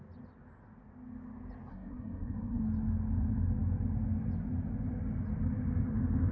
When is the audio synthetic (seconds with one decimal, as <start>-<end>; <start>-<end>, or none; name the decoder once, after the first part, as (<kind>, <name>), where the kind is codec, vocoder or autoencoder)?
1.7-2.6 (codec, SNAC)